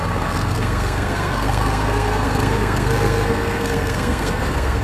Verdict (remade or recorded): remade